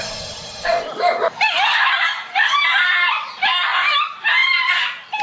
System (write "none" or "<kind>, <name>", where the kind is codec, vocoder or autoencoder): vocoder, BigVGAN v2